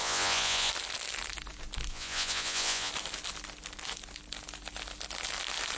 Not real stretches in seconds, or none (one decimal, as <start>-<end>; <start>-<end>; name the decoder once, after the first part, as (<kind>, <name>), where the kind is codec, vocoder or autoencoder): 0.0-0.7 (vocoder, Vocos); 1.9-2.9